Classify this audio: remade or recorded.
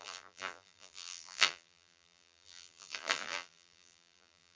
remade